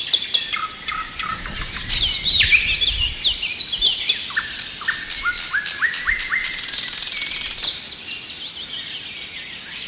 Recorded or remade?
recorded